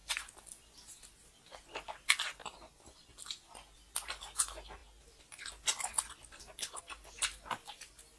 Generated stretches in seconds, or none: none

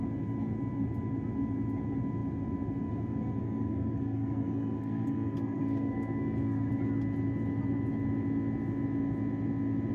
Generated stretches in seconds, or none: 3.4-6.7

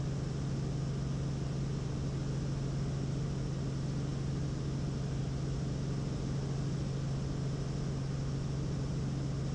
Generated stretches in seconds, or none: none

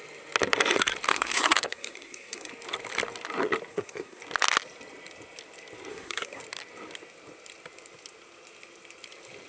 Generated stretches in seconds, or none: 1.1-2.5; 3.7-4.2; 5.9-6.4